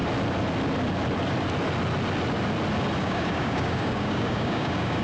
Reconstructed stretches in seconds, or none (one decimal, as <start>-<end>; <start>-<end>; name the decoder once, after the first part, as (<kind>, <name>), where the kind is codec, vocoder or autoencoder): 3.0-5.0 (codec, DAC)